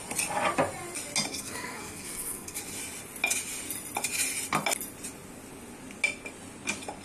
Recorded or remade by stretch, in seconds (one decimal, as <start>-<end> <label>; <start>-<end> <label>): 0.0-1.3 recorded; 1.3-2.6 remade; 2.6-7.0 recorded